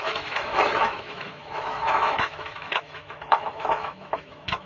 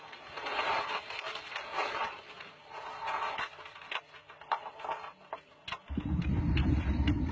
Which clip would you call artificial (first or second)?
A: first